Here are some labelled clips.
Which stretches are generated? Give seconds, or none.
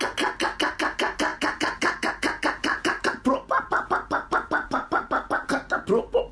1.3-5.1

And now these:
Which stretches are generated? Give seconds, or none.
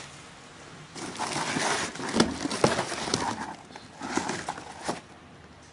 none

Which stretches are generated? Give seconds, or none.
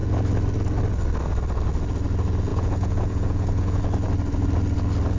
2.5-3.8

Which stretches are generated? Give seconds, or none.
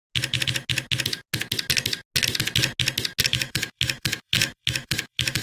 3.2-5.4